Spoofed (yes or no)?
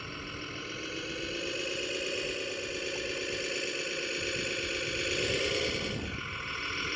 no